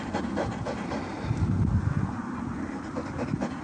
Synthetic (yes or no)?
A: no